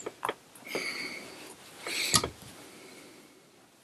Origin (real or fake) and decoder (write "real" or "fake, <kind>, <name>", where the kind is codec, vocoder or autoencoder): real